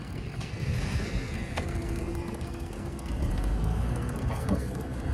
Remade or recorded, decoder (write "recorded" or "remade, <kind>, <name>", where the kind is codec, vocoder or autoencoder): remade, codec, SNAC